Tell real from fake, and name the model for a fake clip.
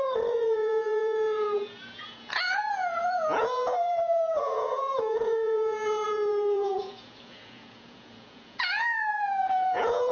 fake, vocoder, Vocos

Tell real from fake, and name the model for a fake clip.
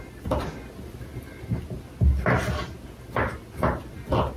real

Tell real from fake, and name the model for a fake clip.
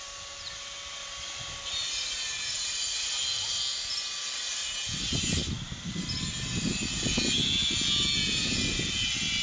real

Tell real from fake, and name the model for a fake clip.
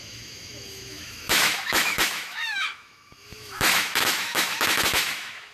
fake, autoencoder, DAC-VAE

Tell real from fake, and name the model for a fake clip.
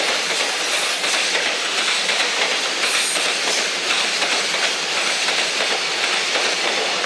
real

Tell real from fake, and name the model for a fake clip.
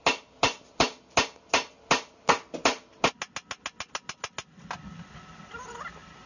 real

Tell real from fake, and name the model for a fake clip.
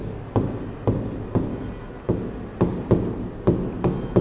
real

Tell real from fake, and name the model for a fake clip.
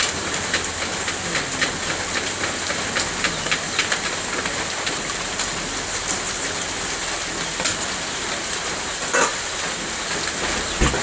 real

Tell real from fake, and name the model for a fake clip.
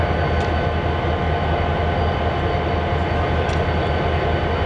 real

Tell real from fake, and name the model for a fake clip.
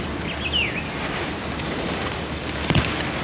real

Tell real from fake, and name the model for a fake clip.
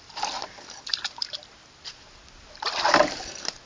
real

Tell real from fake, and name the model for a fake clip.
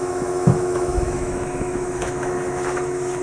fake, autoencoder, DAC-VAE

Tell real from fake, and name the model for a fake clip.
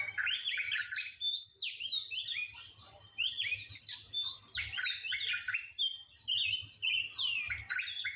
real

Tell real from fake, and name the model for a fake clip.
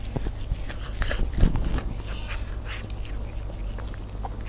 real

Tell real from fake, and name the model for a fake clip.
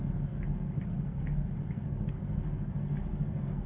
fake, codec, SNAC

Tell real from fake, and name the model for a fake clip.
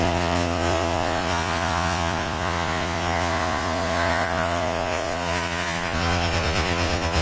fake, vocoder, Vocos